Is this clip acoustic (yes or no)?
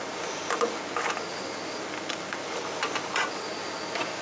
yes